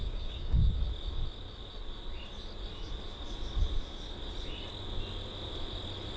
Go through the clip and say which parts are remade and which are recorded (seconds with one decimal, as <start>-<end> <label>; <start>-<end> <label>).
0.0-0.8 remade; 0.8-6.2 recorded